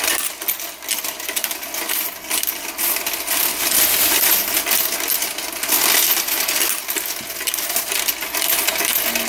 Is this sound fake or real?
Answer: real